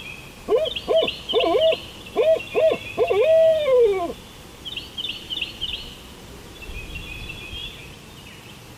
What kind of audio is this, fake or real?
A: real